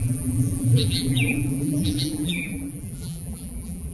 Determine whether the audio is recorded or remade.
remade